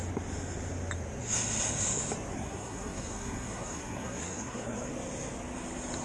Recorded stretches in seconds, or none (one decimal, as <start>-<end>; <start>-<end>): 0.0-2.3; 4.9-6.0